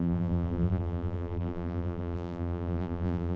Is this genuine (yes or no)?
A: no